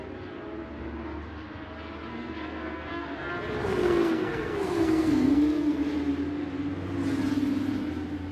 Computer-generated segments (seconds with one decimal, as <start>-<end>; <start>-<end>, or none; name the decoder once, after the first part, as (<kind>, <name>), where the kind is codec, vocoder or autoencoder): 2.1-3.3 (codec, SNAC); 3.8-5.8